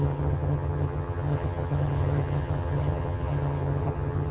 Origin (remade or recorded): remade